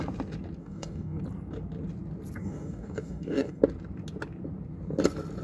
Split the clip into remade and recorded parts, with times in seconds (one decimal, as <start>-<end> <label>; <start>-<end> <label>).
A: 0.0-0.6 recorded; 0.6-1.2 remade; 1.2-2.4 recorded; 2.4-3.6 remade; 3.6-5.4 recorded